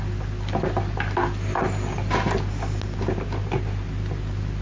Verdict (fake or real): real